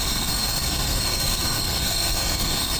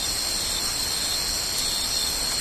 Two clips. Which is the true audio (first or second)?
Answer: second